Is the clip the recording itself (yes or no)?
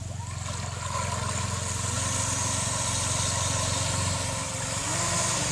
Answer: yes